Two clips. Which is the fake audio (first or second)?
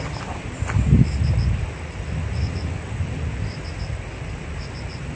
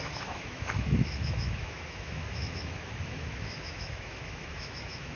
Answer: second